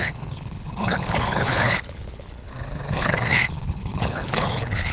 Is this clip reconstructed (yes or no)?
yes